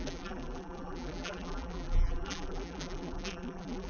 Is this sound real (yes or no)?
no